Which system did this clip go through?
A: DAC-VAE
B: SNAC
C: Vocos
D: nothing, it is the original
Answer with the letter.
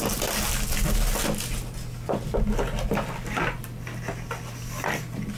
D